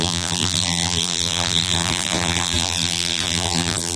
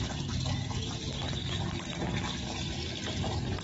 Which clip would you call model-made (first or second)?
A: first